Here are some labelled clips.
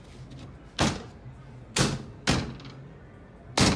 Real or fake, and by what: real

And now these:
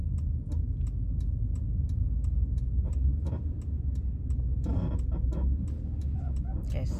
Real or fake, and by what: real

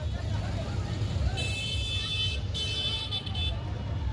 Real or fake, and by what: real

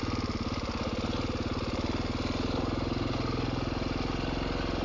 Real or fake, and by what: real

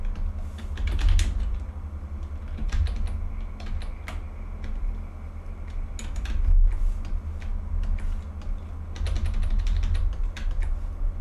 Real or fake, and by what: real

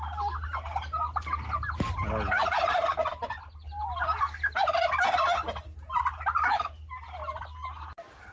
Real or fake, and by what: real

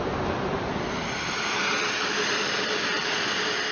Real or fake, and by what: real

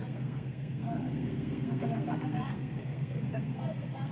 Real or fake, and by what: fake, codec, SNAC